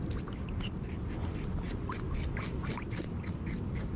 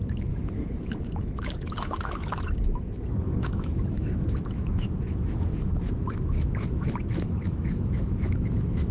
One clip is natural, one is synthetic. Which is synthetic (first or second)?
second